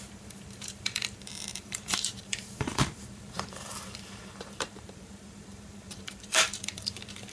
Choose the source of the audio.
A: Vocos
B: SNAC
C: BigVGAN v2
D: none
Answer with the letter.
C